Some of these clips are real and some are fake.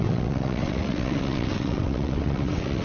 fake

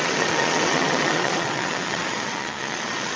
fake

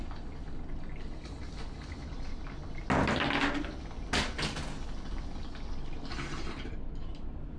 real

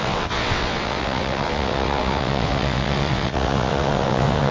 fake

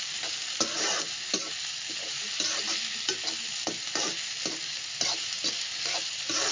real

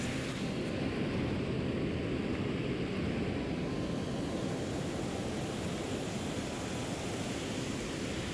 real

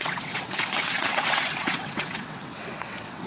fake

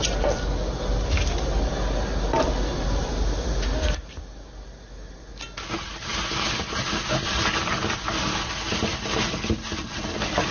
real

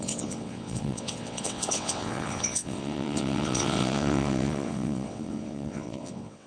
fake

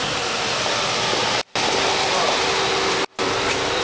real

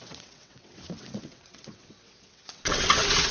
fake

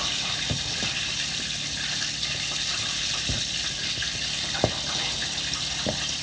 real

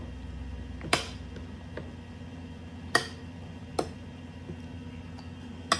real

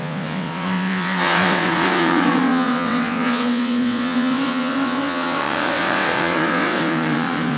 fake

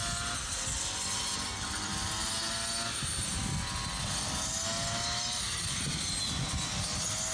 real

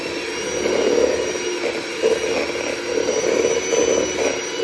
real